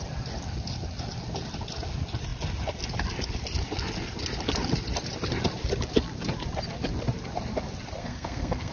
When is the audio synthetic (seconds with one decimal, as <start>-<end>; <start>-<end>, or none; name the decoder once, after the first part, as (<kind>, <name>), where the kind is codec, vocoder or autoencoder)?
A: 8.0-8.7 (codec, SNAC)